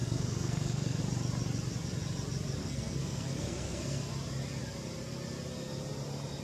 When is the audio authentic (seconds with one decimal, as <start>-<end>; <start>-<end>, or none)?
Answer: 1.0-2.6; 4.1-6.4